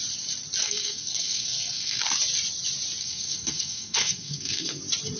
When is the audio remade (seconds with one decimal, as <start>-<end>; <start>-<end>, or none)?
0.6-2.0; 3.0-4.8